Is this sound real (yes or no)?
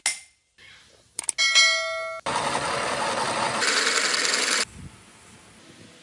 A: yes